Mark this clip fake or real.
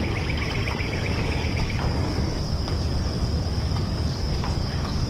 fake